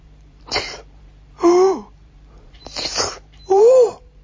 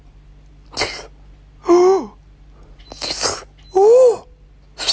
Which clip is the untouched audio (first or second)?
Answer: second